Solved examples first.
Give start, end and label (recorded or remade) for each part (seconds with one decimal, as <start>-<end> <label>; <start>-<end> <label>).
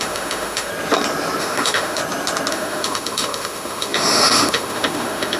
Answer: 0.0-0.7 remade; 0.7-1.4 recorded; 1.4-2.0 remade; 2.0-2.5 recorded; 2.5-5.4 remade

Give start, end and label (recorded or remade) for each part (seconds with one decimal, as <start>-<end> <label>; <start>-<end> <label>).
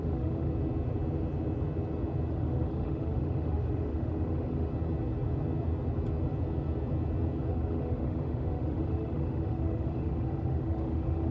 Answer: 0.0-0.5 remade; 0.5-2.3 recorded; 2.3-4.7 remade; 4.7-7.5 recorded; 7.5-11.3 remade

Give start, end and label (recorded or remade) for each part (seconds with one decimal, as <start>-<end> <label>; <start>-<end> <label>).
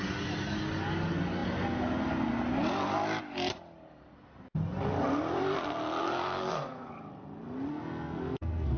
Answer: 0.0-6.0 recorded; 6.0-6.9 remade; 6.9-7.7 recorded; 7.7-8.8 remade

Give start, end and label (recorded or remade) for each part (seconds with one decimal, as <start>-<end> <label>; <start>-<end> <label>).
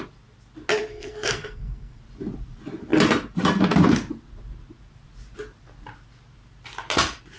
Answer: 0.0-0.9 recorded; 0.9-2.0 remade; 2.0-7.4 recorded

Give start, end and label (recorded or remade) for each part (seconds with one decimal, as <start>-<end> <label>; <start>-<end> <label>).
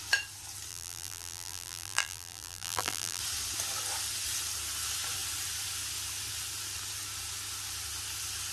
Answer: 0.0-0.7 recorded; 0.7-3.2 remade; 3.2-8.5 recorded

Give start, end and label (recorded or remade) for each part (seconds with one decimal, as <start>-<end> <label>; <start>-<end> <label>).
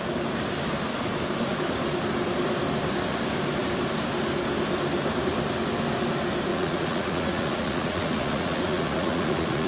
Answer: 0.0-6.5 recorded; 6.5-9.7 remade